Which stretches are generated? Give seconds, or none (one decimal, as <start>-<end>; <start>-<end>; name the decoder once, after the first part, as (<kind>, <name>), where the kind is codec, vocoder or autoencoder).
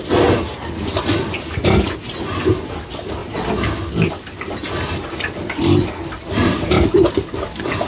none